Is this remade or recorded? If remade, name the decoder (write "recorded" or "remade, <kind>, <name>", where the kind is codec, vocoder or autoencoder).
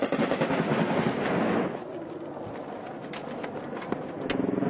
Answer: recorded